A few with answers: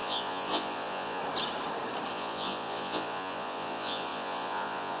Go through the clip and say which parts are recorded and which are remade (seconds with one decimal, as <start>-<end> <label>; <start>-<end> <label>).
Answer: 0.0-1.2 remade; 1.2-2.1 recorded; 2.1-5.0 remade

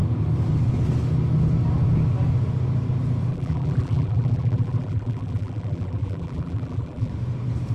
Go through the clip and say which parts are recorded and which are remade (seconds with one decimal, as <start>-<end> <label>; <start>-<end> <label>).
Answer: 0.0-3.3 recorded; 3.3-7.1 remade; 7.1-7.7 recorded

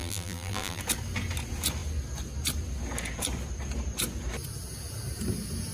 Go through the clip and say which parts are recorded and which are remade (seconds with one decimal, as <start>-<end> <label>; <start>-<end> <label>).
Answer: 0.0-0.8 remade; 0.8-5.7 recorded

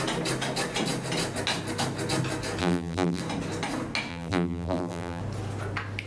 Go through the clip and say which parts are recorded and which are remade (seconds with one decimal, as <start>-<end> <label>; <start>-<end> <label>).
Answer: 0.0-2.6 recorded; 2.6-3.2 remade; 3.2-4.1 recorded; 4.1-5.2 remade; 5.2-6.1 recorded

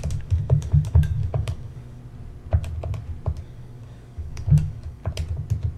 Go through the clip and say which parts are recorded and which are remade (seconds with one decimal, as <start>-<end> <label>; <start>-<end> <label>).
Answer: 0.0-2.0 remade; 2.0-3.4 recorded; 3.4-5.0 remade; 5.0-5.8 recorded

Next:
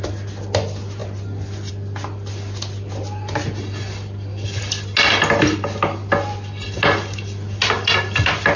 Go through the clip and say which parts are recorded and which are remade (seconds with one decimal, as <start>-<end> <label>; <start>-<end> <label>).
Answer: 0.0-8.6 recorded

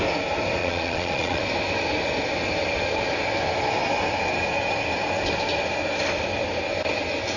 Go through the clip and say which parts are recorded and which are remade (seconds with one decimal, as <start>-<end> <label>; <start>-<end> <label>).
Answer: 0.0-0.6 recorded; 0.6-1.4 remade; 1.4-7.4 recorded

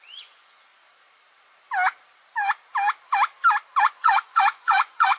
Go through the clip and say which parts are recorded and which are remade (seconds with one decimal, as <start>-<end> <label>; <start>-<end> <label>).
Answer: 0.0-0.7 remade; 0.7-3.8 recorded; 3.8-5.2 remade